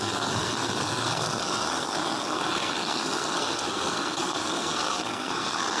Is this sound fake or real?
fake